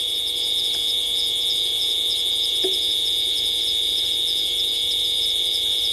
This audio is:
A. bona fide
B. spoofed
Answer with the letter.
B